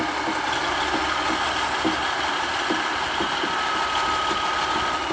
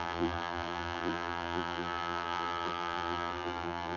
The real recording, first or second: first